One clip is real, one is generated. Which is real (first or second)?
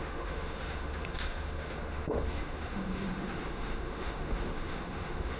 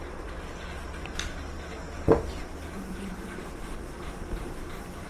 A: second